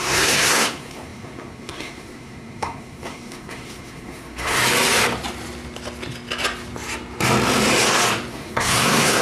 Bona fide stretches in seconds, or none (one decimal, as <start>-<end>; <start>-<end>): 4.6-8.3